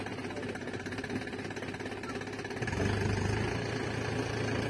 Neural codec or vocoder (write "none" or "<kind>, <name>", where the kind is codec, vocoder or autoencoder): none